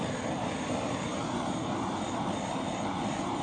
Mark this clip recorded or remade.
recorded